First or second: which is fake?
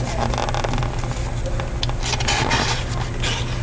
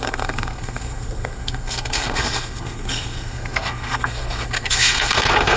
second